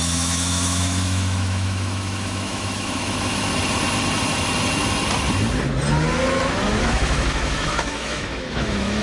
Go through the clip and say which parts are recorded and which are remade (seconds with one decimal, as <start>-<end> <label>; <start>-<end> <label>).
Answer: 0.0-3.5 remade; 3.5-6.8 recorded; 6.8-9.0 remade